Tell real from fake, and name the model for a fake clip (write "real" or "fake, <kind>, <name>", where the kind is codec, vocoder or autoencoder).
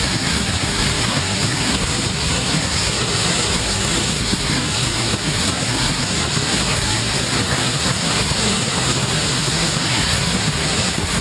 fake, codec, SNAC